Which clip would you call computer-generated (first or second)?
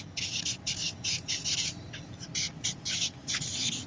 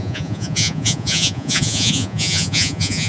second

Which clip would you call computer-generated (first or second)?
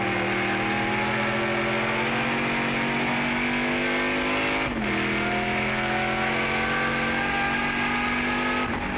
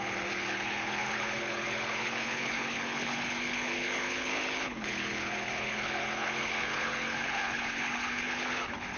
second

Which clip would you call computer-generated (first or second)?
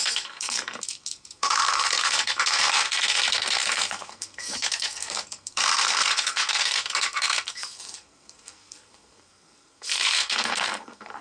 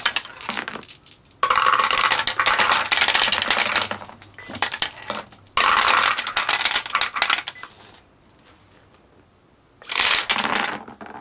first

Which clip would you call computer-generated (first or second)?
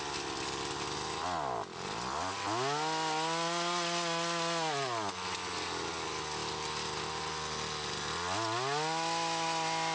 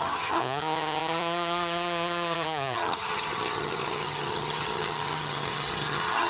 second